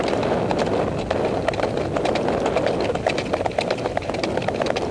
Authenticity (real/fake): real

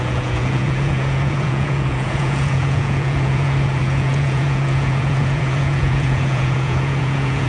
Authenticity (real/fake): fake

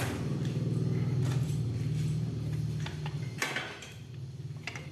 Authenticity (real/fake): real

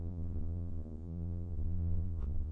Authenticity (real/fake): fake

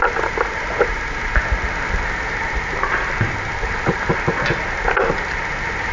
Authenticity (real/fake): real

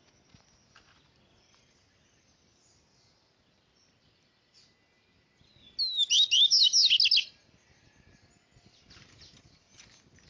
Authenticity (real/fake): real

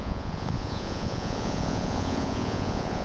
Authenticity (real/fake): fake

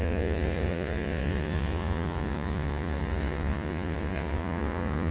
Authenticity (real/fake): fake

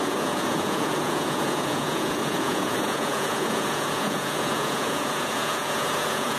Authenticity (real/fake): fake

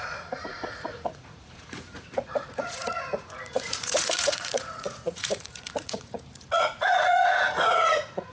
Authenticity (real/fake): fake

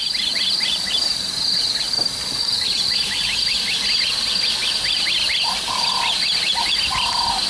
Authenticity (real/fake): real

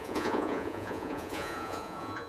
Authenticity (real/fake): fake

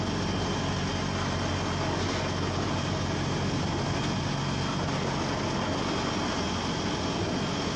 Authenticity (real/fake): real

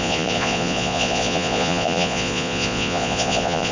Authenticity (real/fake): fake